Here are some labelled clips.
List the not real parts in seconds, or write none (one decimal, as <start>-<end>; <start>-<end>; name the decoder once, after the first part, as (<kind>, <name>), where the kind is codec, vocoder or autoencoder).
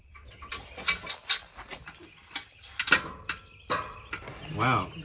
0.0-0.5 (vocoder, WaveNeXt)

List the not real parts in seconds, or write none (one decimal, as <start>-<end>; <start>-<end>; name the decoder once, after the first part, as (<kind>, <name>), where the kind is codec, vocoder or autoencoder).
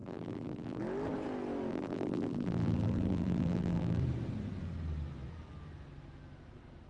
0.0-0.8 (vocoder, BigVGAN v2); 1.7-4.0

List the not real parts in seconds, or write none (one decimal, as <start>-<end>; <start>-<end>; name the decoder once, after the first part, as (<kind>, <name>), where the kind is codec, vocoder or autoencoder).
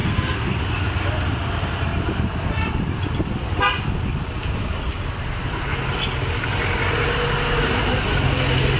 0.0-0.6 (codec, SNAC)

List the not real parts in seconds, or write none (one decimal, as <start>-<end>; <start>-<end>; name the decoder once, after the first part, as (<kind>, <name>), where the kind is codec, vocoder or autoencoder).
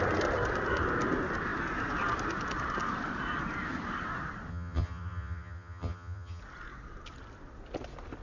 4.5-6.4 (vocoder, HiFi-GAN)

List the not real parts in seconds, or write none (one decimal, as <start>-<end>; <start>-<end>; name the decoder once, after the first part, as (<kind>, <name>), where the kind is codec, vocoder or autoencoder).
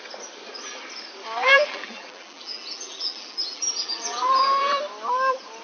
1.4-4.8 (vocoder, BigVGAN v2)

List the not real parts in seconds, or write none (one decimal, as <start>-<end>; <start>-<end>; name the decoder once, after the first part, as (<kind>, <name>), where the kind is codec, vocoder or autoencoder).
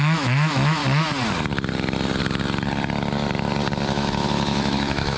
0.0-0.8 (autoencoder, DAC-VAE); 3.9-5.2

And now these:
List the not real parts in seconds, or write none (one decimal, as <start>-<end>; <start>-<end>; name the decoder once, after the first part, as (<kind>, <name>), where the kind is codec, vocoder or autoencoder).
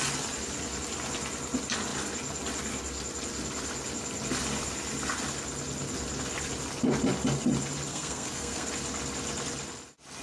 7.9-8.7 (codec, SNAC)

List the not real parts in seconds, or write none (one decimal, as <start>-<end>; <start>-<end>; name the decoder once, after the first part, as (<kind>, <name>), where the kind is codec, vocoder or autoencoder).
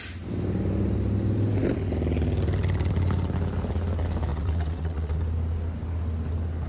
4.3-5.2 (vocoder, WaveNeXt)